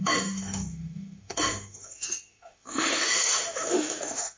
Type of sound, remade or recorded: remade